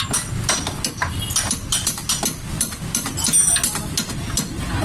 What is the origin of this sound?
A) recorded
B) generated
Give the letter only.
A